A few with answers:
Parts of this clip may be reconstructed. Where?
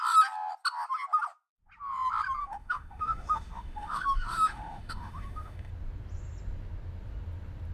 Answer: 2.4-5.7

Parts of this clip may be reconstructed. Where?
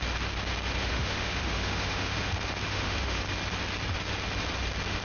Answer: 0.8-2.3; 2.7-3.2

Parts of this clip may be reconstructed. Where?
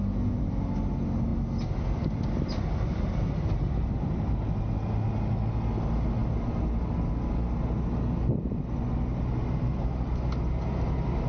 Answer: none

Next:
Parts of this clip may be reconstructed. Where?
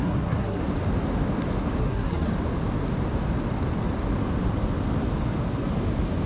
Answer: 0.0-0.6; 1.8-2.3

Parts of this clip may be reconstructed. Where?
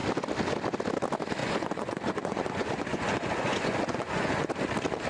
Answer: 1.4-4.5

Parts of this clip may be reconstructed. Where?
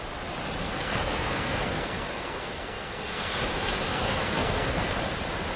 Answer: 0.6-3.4; 3.9-5.0